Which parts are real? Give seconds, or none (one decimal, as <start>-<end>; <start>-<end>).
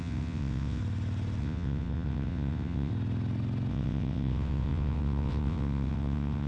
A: 0.8-1.4; 2.9-3.7